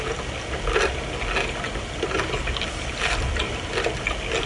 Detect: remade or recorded recorded